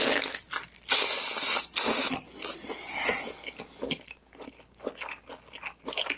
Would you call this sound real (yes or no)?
yes